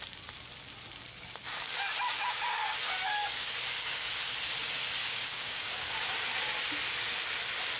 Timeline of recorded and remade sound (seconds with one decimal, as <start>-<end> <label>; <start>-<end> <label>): 0.0-3.1 recorded; 3.1-4.1 remade; 4.1-5.0 recorded; 5.0-5.9 remade; 5.9-7.8 recorded

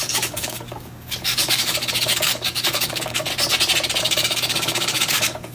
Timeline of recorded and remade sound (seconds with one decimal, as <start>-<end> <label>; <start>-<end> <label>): 0.0-3.3 remade; 3.3-4.0 recorded; 4.0-5.5 remade